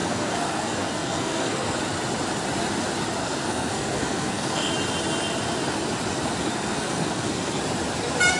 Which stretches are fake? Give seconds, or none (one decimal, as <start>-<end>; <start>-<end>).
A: 0.0-1.8; 3.2-4.7; 6.5-7.6